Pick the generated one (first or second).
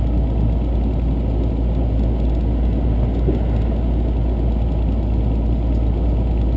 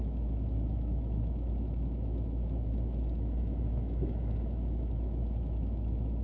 second